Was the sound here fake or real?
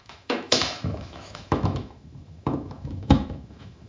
fake